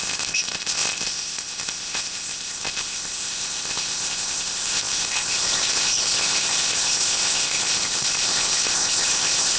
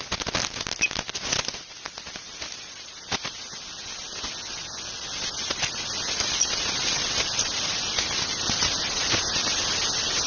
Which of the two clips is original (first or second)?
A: second